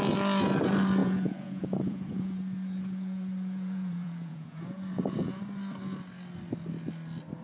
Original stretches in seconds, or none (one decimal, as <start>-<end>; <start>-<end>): 0.0-1.0; 5.4-7.4